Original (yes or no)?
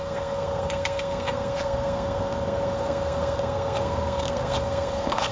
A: no